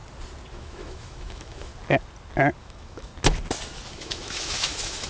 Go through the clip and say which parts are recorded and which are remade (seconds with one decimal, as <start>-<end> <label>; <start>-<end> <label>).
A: 0.0-0.5 recorded; 0.5-1.7 remade; 1.7-2.6 recorded; 2.6-3.1 remade; 3.1-3.9 recorded; 3.9-5.1 remade